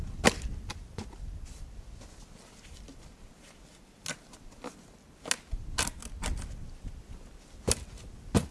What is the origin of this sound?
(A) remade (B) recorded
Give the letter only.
B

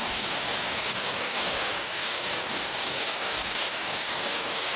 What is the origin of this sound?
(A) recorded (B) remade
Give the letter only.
B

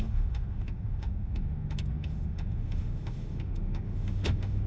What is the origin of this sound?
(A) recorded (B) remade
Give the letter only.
B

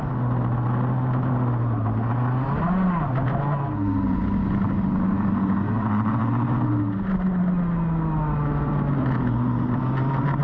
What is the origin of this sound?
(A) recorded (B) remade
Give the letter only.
A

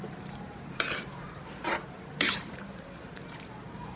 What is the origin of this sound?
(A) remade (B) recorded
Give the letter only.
A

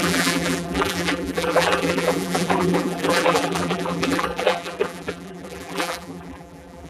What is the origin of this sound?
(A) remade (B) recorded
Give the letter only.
A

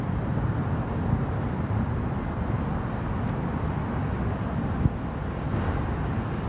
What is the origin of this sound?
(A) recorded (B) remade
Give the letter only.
A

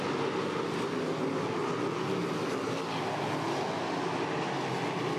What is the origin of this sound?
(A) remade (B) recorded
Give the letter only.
B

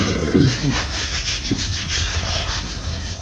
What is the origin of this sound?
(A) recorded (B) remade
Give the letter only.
B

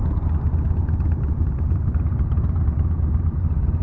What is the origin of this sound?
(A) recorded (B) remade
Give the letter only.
B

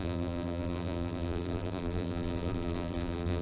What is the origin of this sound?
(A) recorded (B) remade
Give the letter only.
B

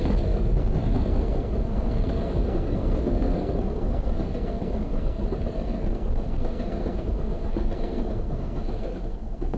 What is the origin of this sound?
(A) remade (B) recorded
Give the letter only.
A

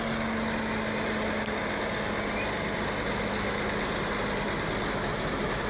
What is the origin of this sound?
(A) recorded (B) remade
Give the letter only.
A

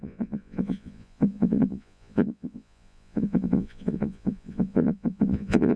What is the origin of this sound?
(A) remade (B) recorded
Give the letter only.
A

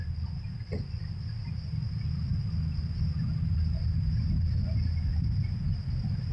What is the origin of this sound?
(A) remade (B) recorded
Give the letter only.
B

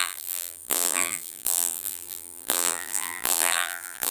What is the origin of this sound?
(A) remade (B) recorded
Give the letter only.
A